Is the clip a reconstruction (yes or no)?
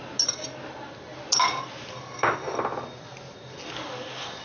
no